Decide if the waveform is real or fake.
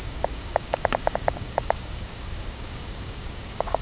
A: fake